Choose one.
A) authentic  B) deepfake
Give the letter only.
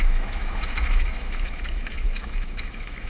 B